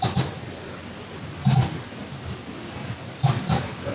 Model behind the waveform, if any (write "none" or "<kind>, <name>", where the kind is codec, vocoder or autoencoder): none